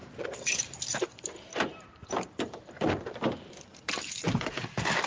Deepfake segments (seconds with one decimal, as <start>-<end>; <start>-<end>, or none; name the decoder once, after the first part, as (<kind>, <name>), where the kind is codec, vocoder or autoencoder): 0.0-3.1 (vocoder, BigVGAN v2); 3.7-5.1